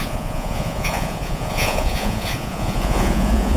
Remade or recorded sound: remade